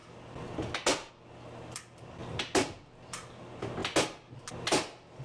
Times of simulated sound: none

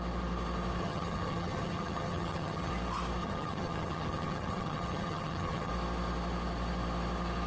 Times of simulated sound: 0.8-2.7 (vocoder, HiFi-GAN); 3.2-5.7

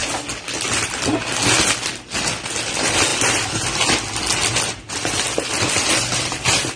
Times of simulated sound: 1.9-6.8 (vocoder, BigVGAN v2)

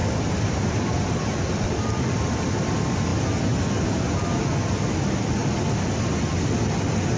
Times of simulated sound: none